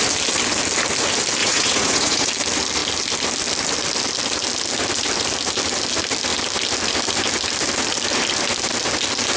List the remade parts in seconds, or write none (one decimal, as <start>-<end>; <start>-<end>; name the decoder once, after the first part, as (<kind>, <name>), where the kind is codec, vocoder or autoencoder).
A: 1.4-2.3 (vocoder, Vocos)